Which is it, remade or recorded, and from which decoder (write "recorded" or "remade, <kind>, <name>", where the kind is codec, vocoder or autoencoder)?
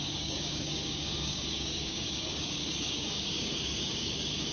remade, codec, DAC